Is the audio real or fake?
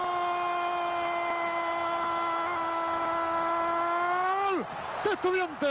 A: real